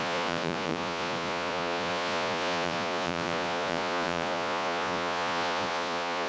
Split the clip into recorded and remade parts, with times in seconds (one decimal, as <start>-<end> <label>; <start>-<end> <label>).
0.0-6.3 remade